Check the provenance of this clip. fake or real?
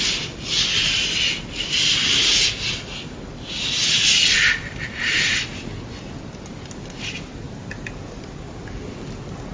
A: real